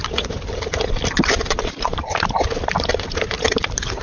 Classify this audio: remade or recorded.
recorded